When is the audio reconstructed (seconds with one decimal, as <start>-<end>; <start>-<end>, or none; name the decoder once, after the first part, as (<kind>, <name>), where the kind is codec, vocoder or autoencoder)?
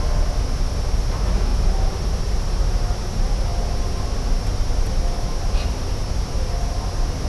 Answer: none